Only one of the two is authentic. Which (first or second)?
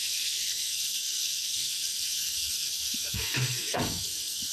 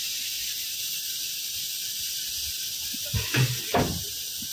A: second